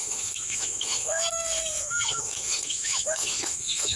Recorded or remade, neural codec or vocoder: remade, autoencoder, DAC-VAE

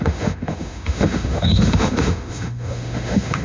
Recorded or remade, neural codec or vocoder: remade, autoencoder, DAC-VAE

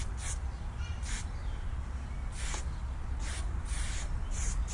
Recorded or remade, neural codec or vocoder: recorded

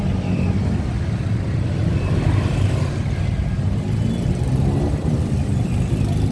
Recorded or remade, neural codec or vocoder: recorded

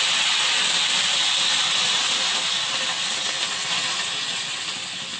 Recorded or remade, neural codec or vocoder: recorded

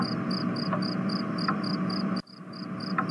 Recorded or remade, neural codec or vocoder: recorded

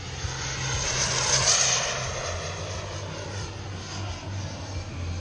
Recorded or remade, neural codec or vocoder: recorded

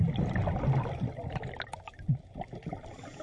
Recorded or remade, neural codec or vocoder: recorded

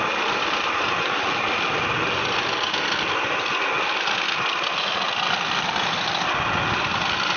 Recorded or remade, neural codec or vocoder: recorded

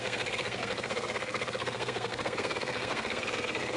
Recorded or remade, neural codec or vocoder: remade, codec, SNAC